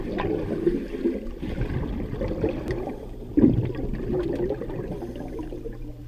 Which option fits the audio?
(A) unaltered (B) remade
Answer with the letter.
A